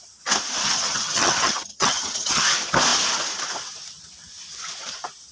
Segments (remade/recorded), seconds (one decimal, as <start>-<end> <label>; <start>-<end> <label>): 0.0-0.6 recorded; 0.6-2.4 remade; 2.4-5.3 recorded